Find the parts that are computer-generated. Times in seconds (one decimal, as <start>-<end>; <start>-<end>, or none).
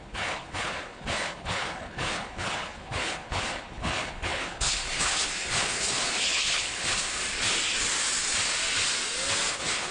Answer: 0.0-7.2; 9.5-9.9